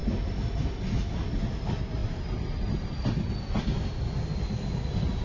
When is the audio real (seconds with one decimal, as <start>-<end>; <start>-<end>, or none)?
0.0-2.0; 3.5-5.2